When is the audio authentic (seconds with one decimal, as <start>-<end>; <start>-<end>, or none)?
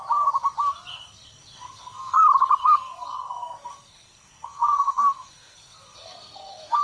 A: 0.0-0.9; 2.2-2.6